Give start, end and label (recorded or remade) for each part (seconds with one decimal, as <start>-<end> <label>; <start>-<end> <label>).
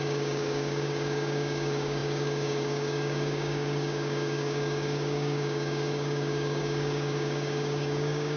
0.0-8.4 remade